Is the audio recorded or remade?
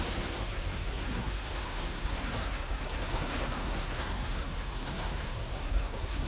remade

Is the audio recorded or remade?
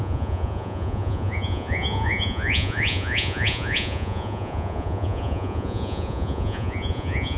remade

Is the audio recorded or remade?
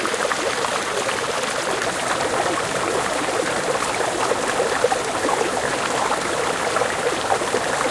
recorded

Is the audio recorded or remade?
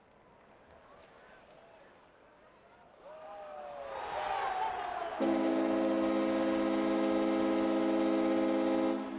recorded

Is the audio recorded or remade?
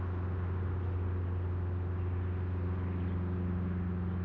recorded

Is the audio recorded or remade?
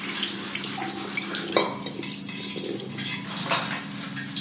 recorded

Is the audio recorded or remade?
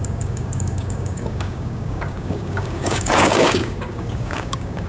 remade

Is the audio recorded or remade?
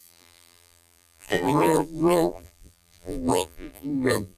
remade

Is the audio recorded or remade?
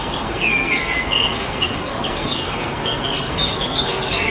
remade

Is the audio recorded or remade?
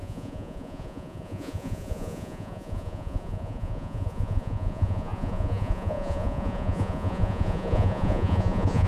remade